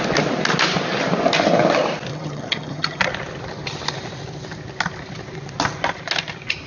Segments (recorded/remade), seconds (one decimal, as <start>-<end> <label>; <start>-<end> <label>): 0.0-2.1 recorded; 2.1-3.0 remade; 3.0-6.7 recorded